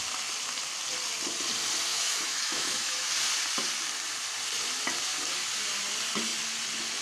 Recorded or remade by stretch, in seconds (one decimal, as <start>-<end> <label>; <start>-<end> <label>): 0.0-1.9 recorded; 1.9-3.1 remade; 3.1-7.0 recorded